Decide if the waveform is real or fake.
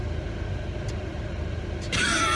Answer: real